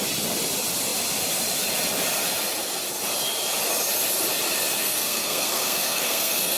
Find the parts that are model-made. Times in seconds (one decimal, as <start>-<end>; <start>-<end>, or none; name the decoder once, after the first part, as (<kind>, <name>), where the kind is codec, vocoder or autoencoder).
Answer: 4.8-6.6 (codec, SNAC)